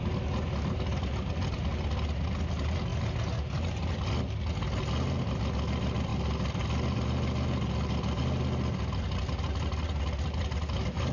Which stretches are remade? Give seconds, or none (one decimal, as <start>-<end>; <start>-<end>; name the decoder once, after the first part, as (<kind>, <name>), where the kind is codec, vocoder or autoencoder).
none